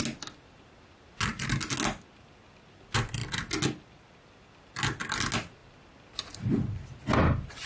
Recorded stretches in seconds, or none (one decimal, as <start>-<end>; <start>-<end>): 0.0-7.7